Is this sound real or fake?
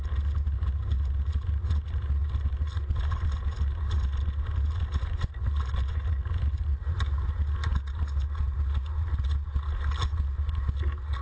real